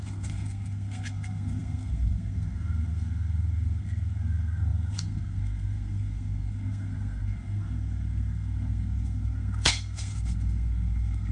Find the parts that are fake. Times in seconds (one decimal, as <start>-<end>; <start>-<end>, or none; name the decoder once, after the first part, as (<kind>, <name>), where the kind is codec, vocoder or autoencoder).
0.0-11.3 (codec, SNAC)